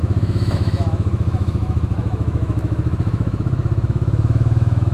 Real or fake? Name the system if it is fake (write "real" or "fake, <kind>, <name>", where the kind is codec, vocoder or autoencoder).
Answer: fake, autoencoder, DAC-VAE